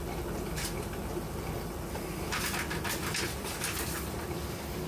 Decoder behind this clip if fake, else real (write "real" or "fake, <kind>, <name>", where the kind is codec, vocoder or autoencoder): real